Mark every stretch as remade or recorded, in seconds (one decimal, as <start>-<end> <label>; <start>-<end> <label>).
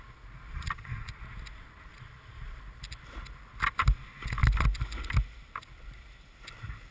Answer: 0.0-0.5 recorded; 0.5-1.2 remade; 1.2-1.9 recorded; 1.9-2.6 remade; 2.6-6.9 recorded